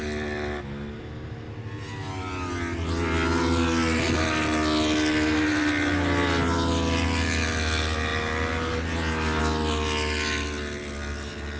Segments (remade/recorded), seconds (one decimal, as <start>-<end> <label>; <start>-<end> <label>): 0.0-11.6 recorded